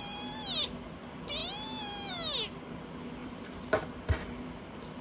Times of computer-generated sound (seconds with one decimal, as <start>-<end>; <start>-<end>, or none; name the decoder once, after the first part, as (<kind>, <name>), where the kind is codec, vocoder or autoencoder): 3.2-3.8 (vocoder, BigVGAN v2)